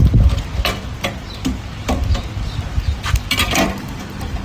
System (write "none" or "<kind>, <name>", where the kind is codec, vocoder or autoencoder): vocoder, BigVGAN v2